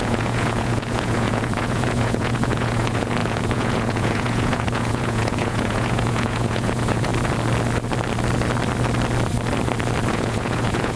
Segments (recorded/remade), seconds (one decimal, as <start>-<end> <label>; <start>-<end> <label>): 0.0-7.1 remade; 7.1-10.1 recorded; 10.1-11.0 remade